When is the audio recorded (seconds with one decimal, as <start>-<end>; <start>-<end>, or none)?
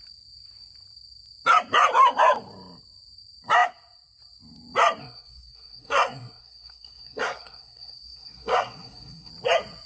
0.0-5.0; 9.3-9.9